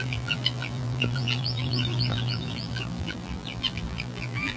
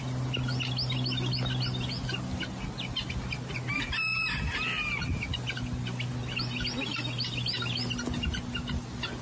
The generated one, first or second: first